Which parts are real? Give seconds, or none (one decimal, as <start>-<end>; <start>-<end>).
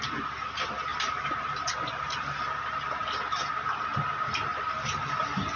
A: 0.0-0.9; 2.4-4.5; 5.1-5.6